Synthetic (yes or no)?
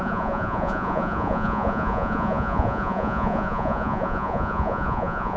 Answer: yes